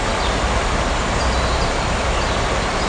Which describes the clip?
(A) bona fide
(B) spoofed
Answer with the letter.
A